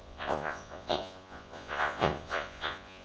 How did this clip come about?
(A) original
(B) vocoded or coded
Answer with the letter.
B